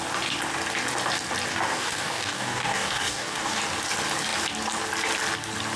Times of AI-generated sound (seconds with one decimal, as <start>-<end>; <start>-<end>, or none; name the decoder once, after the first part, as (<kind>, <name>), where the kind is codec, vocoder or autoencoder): 1.5-3.6 (codec, DAC)